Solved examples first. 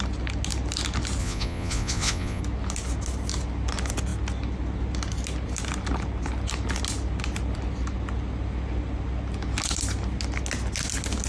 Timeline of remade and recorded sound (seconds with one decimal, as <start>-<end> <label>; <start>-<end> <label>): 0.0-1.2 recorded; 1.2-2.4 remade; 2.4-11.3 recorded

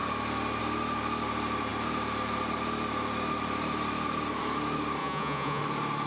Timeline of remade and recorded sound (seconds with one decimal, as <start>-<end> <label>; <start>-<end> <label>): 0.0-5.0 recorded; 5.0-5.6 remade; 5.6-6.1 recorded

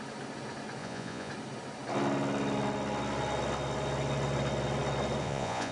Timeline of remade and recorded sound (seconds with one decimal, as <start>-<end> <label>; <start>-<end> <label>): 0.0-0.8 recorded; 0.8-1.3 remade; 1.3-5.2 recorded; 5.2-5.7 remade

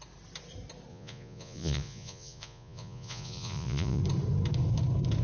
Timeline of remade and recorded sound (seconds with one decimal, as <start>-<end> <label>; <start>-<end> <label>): 0.0-0.9 recorded; 0.9-4.0 remade; 4.0-5.2 recorded

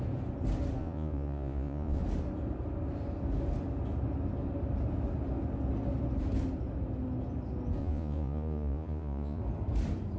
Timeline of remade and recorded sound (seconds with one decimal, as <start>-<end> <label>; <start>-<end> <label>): 0.0-0.8 recorded; 0.8-2.0 remade; 2.0-7.8 recorded; 7.8-9.4 remade; 9.4-10.2 recorded

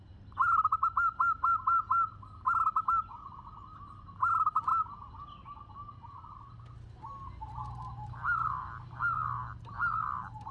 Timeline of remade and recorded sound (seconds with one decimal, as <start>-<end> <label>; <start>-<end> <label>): 0.0-10.5 recorded